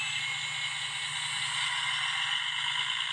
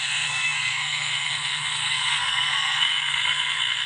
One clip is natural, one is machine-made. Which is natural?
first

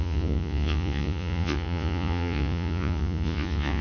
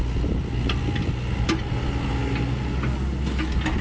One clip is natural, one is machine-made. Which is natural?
second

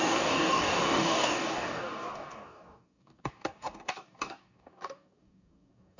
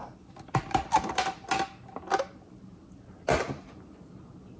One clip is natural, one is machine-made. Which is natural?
second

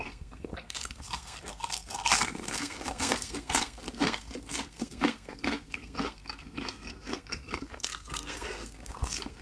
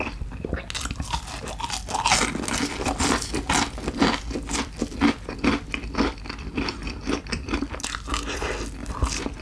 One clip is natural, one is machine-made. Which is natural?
second